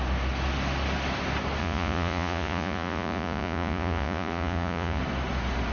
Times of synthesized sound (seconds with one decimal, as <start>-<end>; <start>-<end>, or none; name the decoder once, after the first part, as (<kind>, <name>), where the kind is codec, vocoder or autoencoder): 1.6-5.0 (vocoder, Vocos)